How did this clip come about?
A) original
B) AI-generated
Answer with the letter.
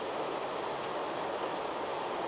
A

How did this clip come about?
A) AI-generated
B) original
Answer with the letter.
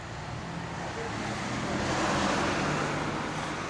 B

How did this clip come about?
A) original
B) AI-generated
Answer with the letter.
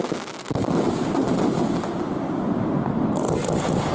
A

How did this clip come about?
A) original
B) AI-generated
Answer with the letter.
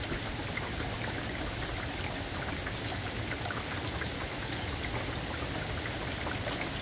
A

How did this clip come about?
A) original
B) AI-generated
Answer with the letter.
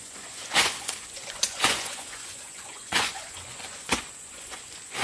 B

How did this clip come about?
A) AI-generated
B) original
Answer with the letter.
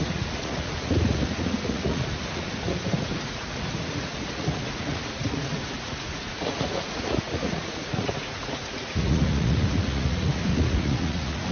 A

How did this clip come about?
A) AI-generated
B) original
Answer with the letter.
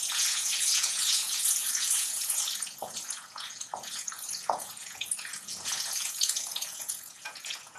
A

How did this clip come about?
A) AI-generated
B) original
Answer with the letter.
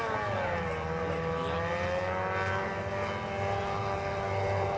B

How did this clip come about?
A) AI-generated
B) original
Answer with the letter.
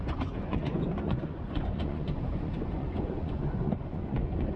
A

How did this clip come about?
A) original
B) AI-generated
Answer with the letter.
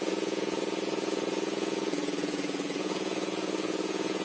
B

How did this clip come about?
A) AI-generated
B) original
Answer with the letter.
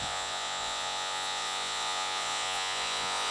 A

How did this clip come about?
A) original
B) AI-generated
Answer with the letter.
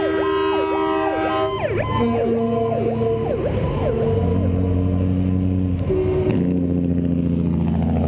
A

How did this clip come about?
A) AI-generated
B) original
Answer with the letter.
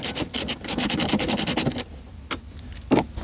B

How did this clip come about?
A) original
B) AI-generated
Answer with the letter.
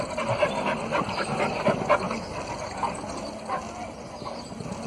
A